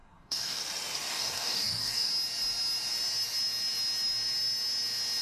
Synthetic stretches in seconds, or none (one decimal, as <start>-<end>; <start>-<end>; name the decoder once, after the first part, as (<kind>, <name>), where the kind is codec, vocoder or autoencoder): 0.0-0.6 (codec, DAC); 1.1-2.1